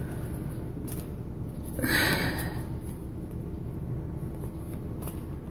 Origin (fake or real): real